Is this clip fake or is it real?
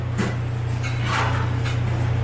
real